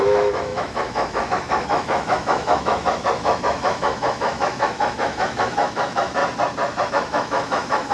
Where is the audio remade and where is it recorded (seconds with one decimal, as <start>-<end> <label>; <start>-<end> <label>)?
0.0-6.2 remade; 6.2-6.9 recorded; 6.9-7.9 remade